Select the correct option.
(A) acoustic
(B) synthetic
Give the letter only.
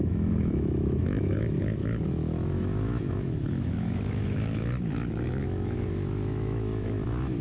B